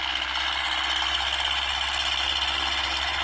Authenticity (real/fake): real